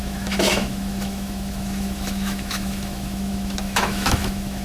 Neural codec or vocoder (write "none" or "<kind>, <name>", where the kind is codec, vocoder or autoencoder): autoencoder, DAC-VAE